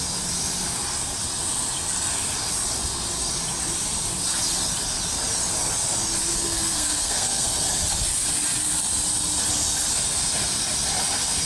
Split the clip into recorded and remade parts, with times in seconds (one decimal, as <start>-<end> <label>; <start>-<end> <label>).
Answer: 0.0-6.3 recorded; 6.3-7.5 remade; 7.5-11.5 recorded